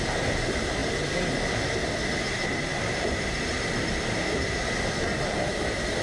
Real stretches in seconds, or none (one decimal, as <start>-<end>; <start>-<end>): 0.0-6.0